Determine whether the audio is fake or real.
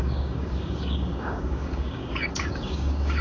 fake